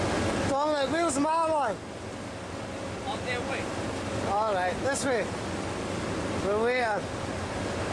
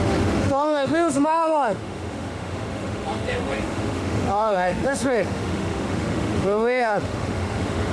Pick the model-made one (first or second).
second